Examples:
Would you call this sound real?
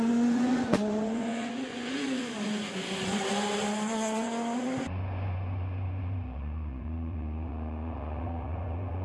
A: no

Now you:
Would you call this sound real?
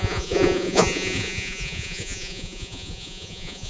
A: no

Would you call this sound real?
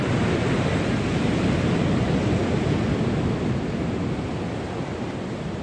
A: yes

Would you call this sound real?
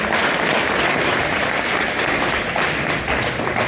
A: yes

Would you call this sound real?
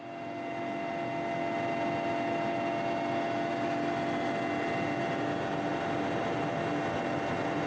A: yes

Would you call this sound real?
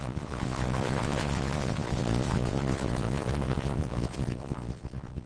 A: no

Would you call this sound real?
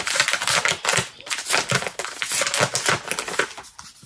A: yes